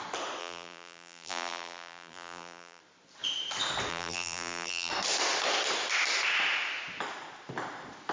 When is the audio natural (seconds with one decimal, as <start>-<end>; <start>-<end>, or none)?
0.0-0.4; 2.8-3.9; 4.9-8.1